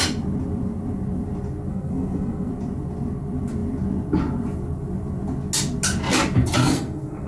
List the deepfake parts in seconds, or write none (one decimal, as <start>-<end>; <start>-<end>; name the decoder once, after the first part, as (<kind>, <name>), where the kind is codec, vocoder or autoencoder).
1.7-2.5 (codec, SNAC); 6.6-7.3